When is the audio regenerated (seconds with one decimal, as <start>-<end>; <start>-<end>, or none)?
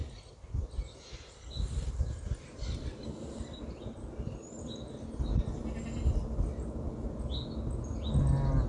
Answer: none